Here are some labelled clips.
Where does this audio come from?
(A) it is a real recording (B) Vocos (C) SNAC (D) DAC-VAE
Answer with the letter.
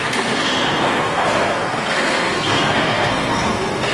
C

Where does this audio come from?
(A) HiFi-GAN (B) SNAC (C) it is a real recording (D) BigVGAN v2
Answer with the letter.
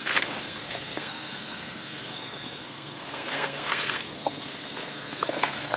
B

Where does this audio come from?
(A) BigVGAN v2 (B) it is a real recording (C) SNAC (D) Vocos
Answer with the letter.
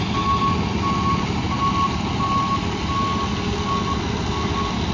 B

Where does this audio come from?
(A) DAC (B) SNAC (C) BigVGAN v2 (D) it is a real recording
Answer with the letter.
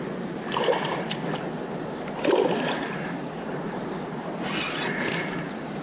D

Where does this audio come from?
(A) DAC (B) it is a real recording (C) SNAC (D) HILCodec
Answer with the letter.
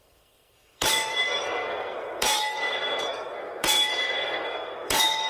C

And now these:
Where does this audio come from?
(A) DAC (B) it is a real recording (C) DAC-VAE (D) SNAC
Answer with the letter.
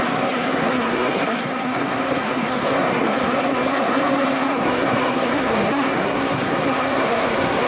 D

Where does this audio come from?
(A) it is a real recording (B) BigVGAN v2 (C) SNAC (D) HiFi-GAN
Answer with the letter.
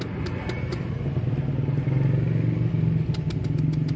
A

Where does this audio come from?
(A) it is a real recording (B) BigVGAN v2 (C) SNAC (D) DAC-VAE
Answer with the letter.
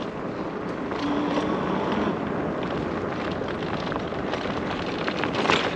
A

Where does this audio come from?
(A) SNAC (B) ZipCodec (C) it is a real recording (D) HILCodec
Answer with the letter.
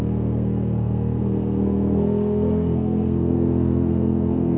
A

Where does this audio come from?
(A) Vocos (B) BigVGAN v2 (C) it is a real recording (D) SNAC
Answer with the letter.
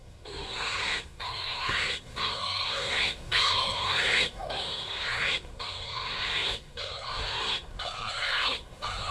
D